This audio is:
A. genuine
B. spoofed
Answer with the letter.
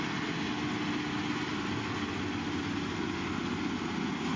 A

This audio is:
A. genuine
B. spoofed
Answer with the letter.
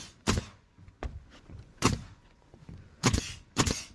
B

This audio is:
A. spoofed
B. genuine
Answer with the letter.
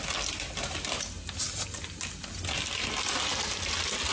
B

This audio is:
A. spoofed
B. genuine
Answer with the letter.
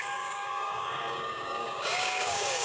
A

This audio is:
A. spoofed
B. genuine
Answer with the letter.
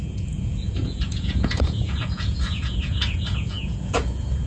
A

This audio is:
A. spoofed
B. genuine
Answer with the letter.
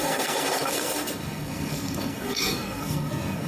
A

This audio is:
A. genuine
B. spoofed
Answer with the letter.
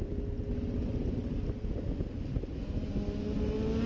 A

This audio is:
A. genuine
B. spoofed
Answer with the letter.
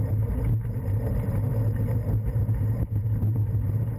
B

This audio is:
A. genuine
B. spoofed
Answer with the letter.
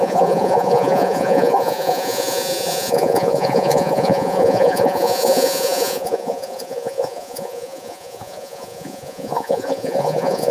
B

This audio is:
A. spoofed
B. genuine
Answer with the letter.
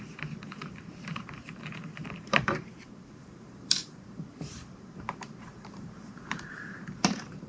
A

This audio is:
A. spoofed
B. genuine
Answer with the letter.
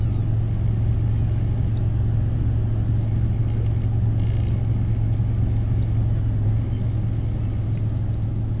B